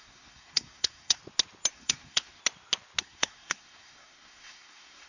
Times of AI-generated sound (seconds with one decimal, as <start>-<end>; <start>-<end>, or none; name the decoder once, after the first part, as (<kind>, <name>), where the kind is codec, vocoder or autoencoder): 0.0-1.2 (codec, SNAC); 1.7-2.4; 3.0-5.1